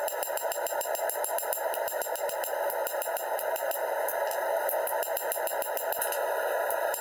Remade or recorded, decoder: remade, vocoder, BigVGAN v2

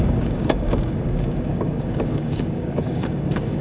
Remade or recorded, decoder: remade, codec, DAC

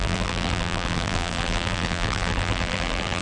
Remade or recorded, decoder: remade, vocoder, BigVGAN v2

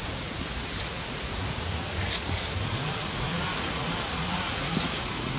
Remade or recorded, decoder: remade, vocoder, Vocos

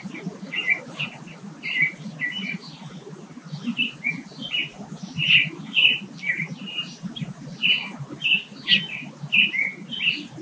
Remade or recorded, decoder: recorded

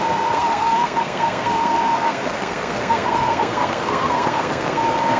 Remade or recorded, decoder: remade, codec, SNAC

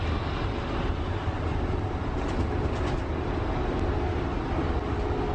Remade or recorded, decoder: recorded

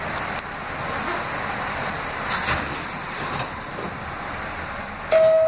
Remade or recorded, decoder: recorded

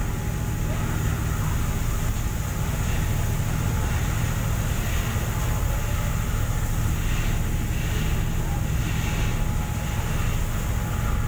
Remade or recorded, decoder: recorded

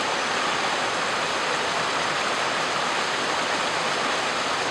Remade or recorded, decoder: recorded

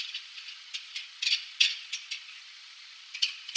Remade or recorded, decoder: remade, vocoder, Vocos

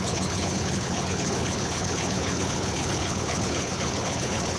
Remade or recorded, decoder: remade, codec, HILCodec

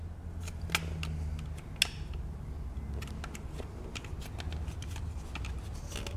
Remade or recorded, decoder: recorded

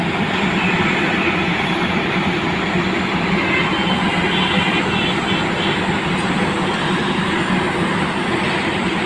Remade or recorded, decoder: recorded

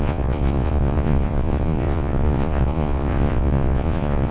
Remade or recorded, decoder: remade, vocoder, Vocos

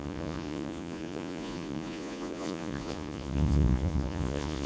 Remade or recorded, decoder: remade, vocoder, Vocos